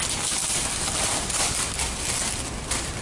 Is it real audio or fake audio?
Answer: real